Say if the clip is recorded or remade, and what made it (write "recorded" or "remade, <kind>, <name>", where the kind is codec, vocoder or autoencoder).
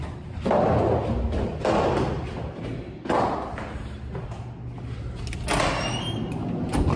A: recorded